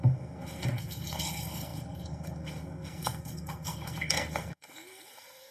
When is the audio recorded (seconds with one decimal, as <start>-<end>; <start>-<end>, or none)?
none